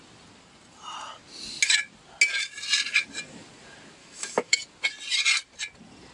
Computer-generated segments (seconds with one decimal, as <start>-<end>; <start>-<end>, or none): 4.0-4.6